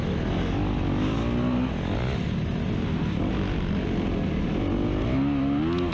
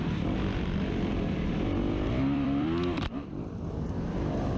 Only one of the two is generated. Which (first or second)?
second